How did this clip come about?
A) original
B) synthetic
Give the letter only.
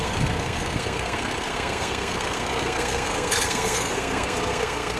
B